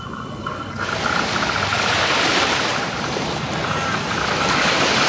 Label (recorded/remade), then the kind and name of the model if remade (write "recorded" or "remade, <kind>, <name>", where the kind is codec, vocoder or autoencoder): recorded